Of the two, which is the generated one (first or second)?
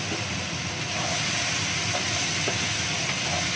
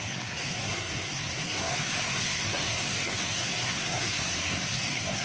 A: second